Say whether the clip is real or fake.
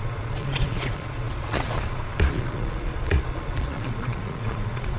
fake